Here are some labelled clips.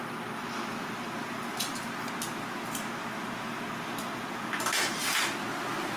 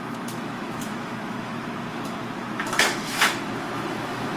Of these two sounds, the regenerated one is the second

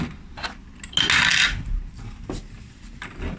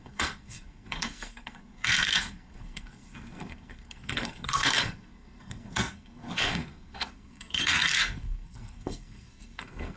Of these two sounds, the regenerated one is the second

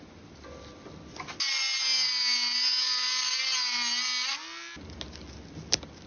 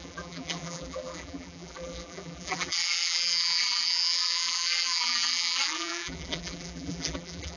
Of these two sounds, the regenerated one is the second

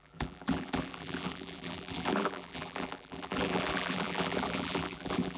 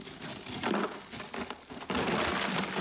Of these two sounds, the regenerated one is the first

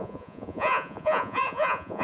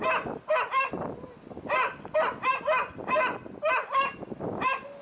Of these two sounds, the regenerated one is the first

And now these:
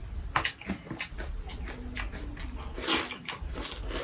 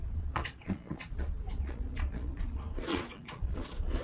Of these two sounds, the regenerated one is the second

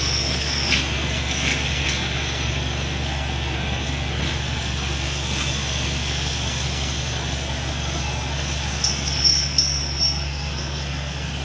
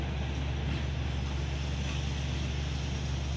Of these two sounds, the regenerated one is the first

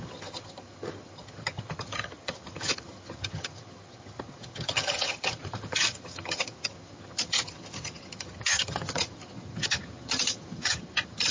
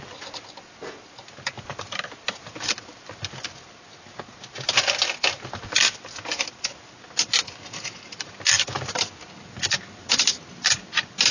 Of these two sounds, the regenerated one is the first